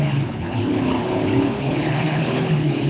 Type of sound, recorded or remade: remade